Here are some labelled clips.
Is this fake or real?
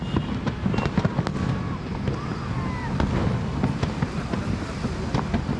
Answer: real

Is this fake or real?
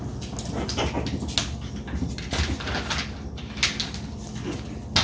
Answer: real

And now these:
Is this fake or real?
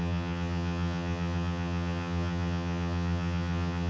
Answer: fake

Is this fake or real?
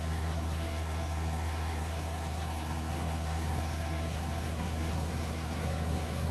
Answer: fake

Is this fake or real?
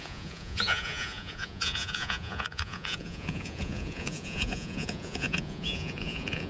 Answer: fake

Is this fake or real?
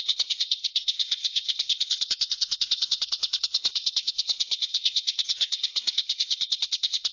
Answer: fake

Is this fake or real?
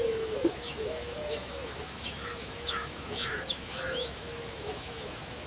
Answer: fake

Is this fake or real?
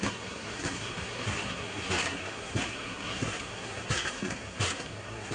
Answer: fake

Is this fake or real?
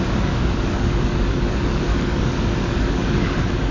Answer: fake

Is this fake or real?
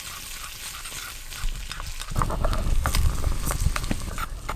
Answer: real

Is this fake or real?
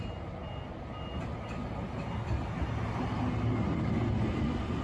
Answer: real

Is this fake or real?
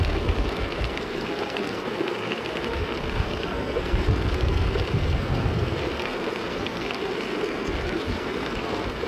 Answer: fake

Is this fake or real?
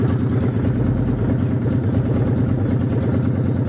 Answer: real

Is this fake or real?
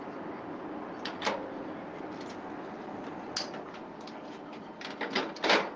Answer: real